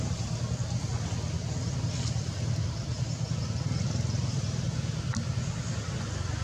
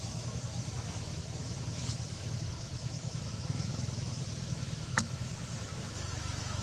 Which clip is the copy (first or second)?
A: second